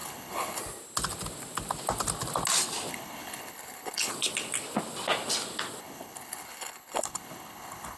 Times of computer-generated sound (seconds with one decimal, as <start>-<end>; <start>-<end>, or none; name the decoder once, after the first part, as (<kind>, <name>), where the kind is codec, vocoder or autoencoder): 0.0-0.6 (codec, HILCodec); 2.9-4.1; 5.8-8.0